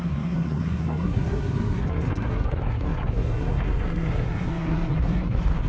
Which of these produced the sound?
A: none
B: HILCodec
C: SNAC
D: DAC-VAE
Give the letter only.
C